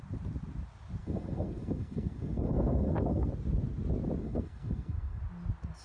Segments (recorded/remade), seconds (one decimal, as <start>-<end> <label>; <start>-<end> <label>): 0.0-1.0 recorded; 1.0-3.3 remade; 3.3-4.2 recorded; 4.2-5.2 remade; 5.2-5.8 recorded